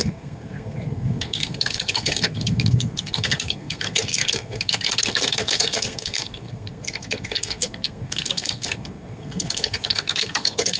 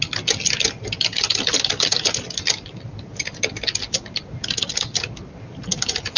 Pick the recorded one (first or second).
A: second